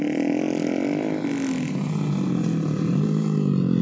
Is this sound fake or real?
real